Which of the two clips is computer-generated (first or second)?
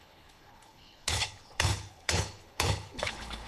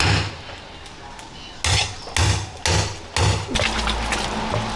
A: first